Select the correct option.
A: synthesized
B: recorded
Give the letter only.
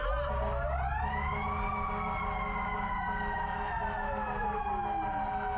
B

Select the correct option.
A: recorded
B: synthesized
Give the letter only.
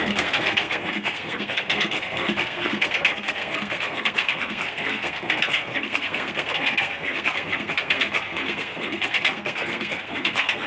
B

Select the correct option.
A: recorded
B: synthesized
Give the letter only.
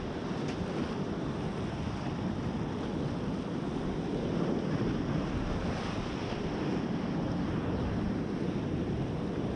A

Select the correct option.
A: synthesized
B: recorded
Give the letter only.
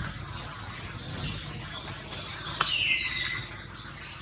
B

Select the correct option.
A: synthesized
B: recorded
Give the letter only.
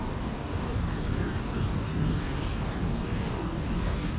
A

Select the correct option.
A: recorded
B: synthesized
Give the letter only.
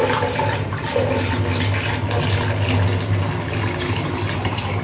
A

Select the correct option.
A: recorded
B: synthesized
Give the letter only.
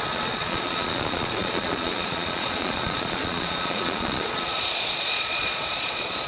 B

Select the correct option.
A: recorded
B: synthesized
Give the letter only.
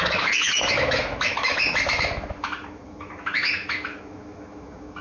B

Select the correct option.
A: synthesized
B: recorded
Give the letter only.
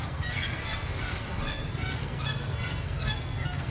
A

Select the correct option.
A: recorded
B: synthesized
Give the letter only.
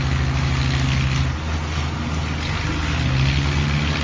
A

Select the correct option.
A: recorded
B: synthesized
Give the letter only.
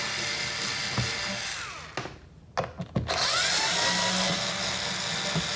A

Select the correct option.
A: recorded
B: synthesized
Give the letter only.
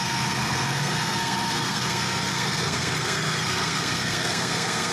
B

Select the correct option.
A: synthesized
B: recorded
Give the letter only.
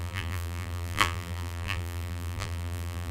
A